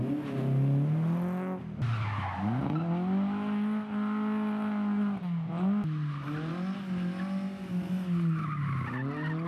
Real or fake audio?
real